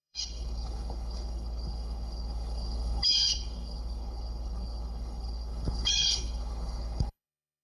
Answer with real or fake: fake